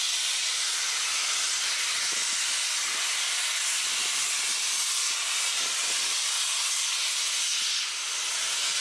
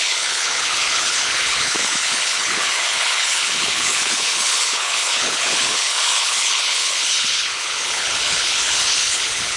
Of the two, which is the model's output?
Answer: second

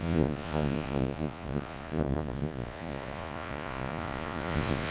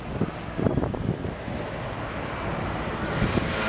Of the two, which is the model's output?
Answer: first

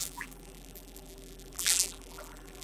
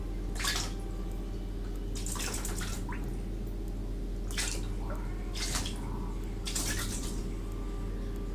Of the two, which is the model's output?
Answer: first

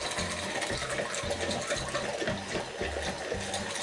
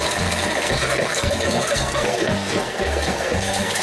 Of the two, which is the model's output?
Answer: second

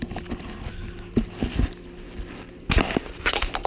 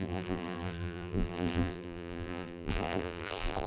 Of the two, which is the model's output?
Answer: second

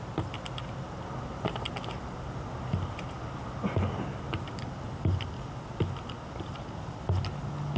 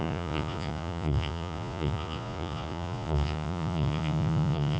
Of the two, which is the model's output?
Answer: second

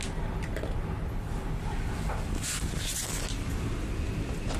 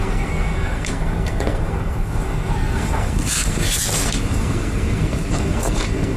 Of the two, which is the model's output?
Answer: second